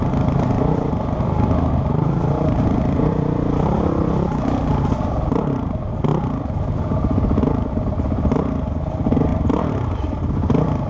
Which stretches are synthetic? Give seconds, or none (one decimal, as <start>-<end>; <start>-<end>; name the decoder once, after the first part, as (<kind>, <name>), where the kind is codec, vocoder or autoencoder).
none